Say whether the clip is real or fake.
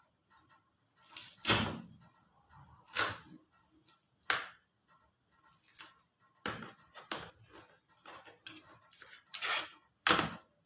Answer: real